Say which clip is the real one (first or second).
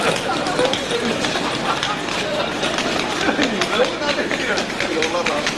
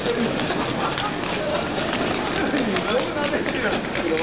second